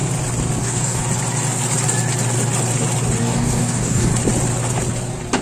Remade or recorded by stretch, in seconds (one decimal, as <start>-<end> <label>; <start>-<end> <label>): 0.0-0.6 recorded; 0.6-1.0 remade; 1.0-3.2 recorded; 3.2-4.1 remade; 4.1-5.4 recorded